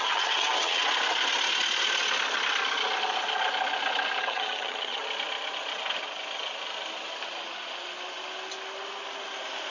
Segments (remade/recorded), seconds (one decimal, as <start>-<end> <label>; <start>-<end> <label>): 0.0-0.8 remade; 0.8-4.2 recorded; 4.2-5.0 remade; 5.0-9.7 recorded